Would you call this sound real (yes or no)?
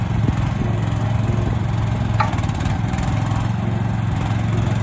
yes